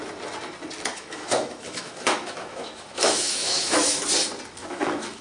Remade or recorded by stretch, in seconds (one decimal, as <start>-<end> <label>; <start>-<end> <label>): 0.0-0.9 recorded; 0.9-4.0 remade; 4.0-4.6 recorded; 4.6-5.2 remade

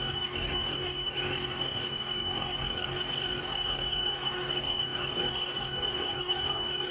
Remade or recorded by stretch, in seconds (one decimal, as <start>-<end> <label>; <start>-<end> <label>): 0.0-6.9 remade

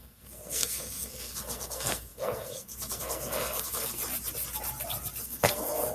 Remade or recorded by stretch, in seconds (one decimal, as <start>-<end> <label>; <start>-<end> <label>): 0.0-4.0 remade; 4.0-5.2 recorded; 5.2-5.9 remade

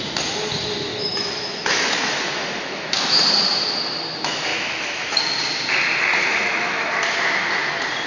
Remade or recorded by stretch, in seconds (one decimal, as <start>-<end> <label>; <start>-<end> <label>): 0.0-0.9 recorded; 0.9-2.9 remade; 2.9-4.5 recorded; 4.5-5.2 remade; 5.2-6.3 recorded; 6.3-6.9 remade; 6.9-8.1 recorded

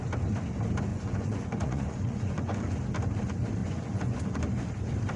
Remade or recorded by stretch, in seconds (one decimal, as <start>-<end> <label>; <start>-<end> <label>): 0.0-0.9 recorded; 0.9-2.6 remade; 2.6-3.6 recorded; 3.6-4.4 remade; 4.4-5.2 recorded

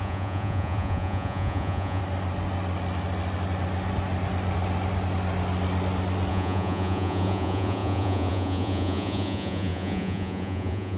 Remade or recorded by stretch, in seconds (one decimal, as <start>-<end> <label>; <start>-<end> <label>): 0.0-2.0 remade; 2.0-6.3 recorded; 6.3-11.0 remade

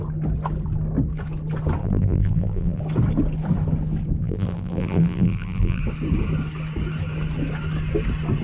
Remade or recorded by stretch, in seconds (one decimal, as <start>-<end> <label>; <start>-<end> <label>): 0.0-1.8 recorded; 1.8-2.8 remade; 2.8-4.2 recorded; 4.2-5.8 remade; 5.8-8.4 recorded

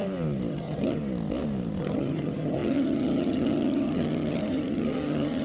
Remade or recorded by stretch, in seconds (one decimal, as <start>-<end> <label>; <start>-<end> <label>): 0.0-0.5 recorded; 0.5-1.0 remade; 1.0-1.8 recorded; 1.8-5.4 remade